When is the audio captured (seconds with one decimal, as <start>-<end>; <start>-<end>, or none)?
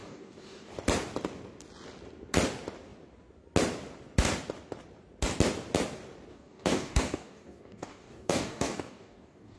0.7-6.3